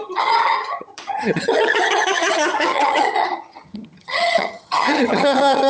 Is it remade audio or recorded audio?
remade